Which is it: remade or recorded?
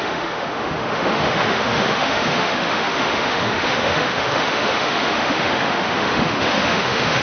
remade